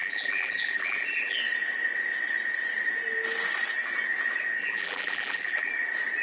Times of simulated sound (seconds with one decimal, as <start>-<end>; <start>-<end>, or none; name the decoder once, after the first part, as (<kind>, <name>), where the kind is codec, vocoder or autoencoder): 0.0-1.4 (vocoder, BigVGAN v2); 4.6-5.7